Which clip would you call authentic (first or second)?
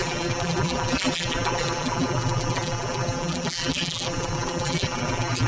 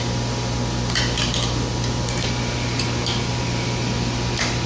second